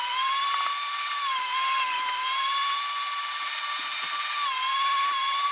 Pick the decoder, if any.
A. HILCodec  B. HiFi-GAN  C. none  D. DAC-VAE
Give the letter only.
C